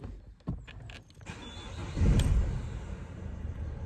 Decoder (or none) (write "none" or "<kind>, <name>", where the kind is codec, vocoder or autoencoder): none